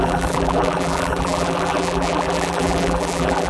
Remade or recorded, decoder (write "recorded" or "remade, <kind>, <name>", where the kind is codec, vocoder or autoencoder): remade, vocoder, BigVGAN v2